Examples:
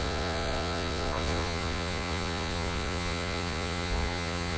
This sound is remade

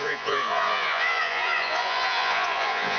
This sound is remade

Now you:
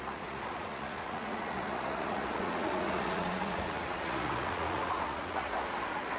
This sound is remade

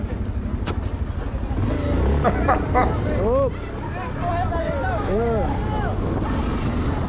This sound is recorded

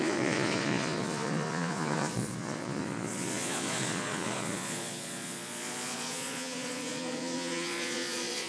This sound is remade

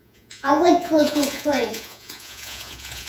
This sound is remade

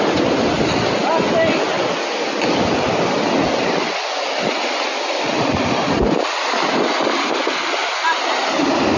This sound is recorded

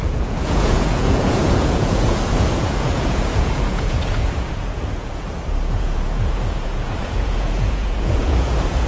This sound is remade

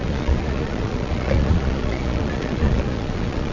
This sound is remade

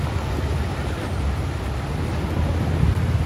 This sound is recorded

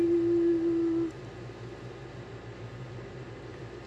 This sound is recorded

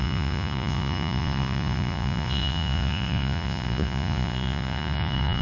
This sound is remade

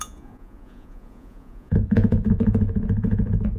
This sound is remade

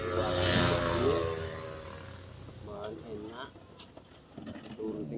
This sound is recorded